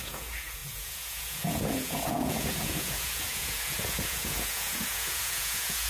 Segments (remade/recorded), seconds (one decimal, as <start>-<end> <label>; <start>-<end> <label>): 0.0-5.9 remade